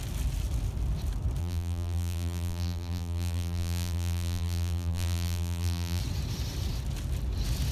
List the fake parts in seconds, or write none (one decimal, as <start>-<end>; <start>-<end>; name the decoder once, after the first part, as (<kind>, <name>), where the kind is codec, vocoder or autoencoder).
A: 1.4-6.0 (vocoder, BigVGAN v2)

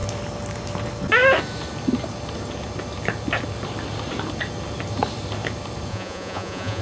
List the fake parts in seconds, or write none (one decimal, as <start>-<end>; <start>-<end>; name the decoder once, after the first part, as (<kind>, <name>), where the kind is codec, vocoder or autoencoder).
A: 5.9-6.8 (vocoder, Vocos)

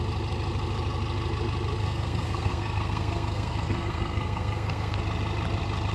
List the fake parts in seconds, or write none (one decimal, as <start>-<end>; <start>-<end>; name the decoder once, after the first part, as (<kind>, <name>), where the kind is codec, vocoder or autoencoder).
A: 1.8-5.0 (codec, SNAC)

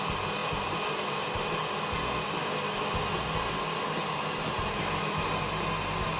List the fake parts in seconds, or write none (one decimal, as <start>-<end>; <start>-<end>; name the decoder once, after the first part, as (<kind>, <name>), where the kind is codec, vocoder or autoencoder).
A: none

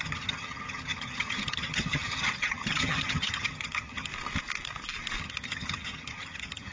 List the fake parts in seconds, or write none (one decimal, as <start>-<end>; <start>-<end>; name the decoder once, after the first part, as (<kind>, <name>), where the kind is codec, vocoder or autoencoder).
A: 0.0-4.1 (vocoder, HiFi-GAN); 5.2-6.7

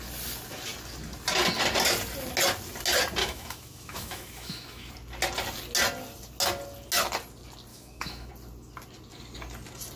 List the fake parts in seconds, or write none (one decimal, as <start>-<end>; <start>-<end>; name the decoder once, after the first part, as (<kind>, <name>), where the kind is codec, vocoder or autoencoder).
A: 3.2-4.9 (autoencoder, DAC-VAE); 7.7-8.3